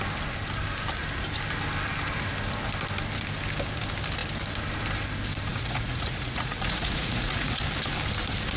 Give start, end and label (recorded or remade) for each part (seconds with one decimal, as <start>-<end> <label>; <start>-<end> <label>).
0.0-5.5 recorded; 5.5-7.6 remade; 7.6-8.6 recorded

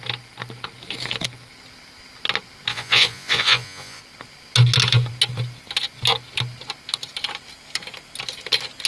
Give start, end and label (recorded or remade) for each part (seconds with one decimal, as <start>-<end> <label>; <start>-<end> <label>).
0.0-2.7 recorded; 2.7-4.0 remade; 4.0-8.9 recorded

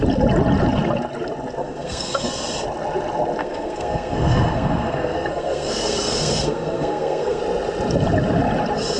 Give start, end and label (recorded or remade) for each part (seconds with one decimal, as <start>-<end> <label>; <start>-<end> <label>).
0.0-1.6 recorded; 1.6-2.3 remade; 2.3-3.4 recorded; 3.4-7.4 remade; 7.4-9.0 recorded

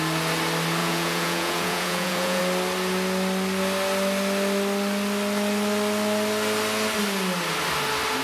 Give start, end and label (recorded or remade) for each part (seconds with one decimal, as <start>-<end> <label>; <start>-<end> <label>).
0.0-0.8 recorded; 0.8-2.4 remade; 2.4-8.2 recorded

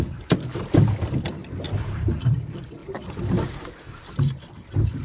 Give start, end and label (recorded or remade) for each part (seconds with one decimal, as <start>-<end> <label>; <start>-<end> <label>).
0.0-1.4 remade; 1.4-2.2 recorded; 2.2-2.8 remade; 2.8-3.6 recorded; 3.6-5.0 remade

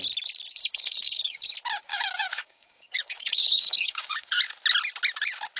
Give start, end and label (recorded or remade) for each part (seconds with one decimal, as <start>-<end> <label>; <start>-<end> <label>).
0.0-0.5 recorded; 0.5-1.5 remade; 1.5-1.9 recorded; 1.9-4.4 remade; 4.4-5.6 recorded

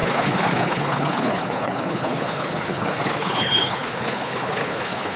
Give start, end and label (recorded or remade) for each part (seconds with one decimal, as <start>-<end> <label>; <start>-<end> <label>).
0.0-5.2 remade

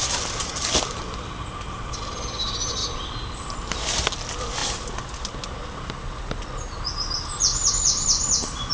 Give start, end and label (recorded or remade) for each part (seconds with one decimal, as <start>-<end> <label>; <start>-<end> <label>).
0.0-1.0 remade; 1.0-8.7 recorded